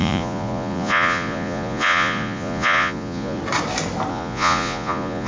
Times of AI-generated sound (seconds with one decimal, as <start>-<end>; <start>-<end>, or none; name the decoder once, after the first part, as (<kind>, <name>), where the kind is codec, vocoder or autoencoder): 0.0-3.4 (vocoder, Vocos); 4.1-5.3